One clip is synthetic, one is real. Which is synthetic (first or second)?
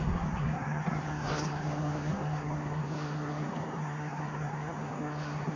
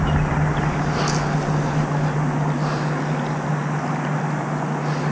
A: first